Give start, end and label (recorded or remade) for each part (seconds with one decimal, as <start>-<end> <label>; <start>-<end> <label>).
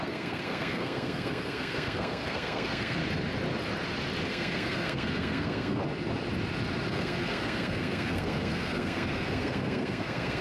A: 0.0-3.0 remade; 3.0-4.3 recorded; 4.3-5.8 remade; 5.8-6.9 recorded; 6.9-10.4 remade